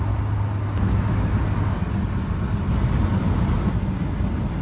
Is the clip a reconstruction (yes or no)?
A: no